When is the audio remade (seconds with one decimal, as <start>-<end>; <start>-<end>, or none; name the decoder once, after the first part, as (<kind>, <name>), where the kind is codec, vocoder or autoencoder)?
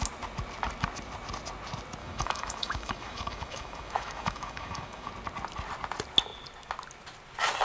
2.0-5.1 (autoencoder, DAC-VAE)